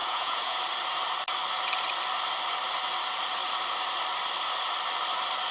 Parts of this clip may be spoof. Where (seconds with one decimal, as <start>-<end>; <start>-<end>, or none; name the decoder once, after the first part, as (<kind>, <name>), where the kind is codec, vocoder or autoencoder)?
0.0-0.6 (vocoder, Vocos)